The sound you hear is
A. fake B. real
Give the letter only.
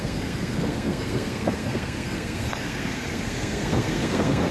A